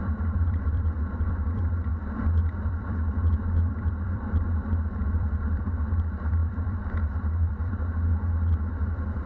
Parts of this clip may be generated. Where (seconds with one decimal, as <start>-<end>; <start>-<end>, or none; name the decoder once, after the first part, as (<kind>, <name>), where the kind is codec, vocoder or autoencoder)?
0.0-9.3 (vocoder, BigVGAN v2)